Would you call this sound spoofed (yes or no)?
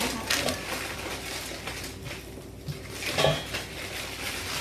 no